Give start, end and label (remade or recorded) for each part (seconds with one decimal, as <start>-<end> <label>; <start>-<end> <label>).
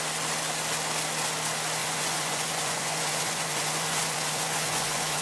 0.0-1.8 recorded; 1.8-5.2 remade